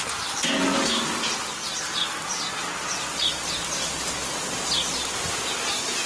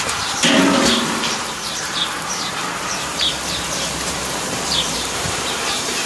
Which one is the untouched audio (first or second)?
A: first